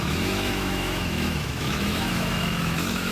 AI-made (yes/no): yes